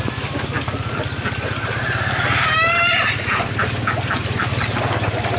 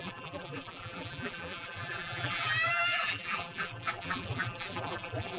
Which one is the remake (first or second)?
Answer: second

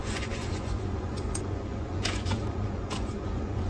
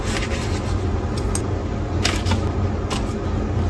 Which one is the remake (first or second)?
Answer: first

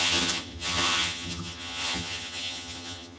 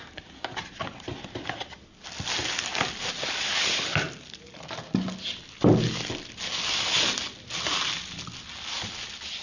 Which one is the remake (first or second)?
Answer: first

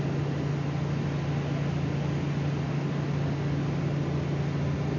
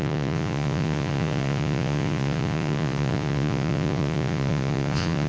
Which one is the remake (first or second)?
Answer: second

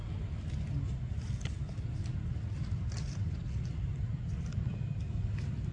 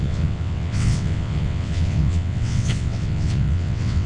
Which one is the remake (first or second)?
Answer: second